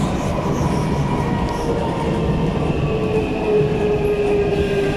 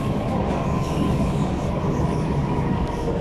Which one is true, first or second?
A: first